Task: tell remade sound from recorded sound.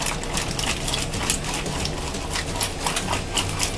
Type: recorded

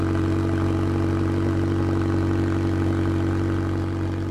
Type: recorded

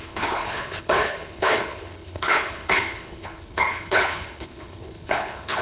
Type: remade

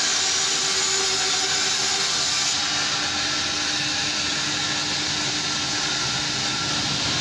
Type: recorded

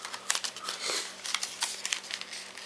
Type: recorded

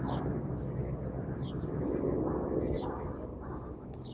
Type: recorded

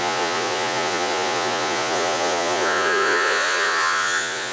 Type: remade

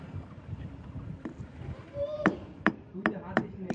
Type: remade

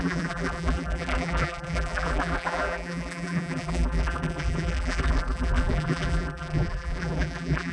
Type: remade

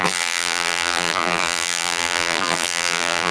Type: remade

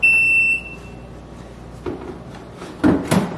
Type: recorded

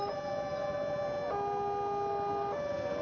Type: recorded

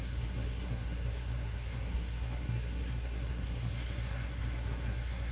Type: remade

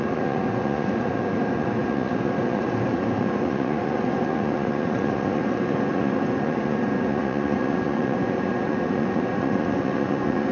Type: remade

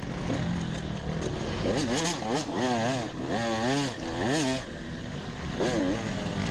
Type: recorded